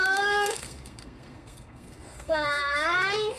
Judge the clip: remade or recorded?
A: remade